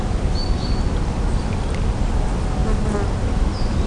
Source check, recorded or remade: recorded